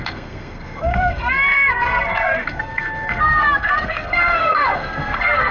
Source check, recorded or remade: remade